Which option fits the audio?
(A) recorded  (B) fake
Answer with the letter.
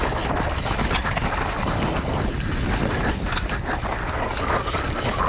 A